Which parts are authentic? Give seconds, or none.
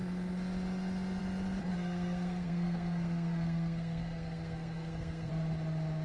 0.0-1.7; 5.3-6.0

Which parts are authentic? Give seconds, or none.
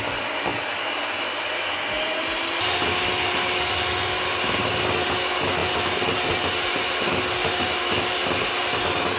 0.0-5.6; 8.2-9.2